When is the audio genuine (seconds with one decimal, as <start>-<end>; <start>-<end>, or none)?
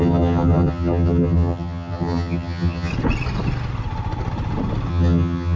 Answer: 2.9-4.9